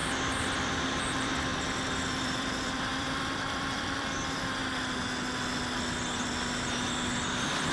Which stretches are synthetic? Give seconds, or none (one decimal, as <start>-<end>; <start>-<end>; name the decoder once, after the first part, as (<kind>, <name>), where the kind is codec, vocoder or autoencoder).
1.0-1.5 (vocoder, BigVGAN v2); 2.2-4.6; 7.2-7.7